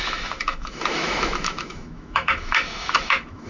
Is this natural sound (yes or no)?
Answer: no